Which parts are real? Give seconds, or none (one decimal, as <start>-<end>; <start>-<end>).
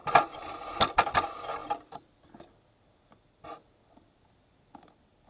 0.0-5.3